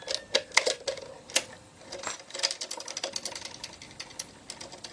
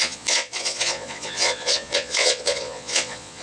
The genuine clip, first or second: first